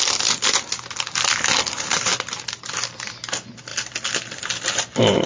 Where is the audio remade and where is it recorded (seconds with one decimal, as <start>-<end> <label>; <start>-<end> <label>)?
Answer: 0.0-5.3 recorded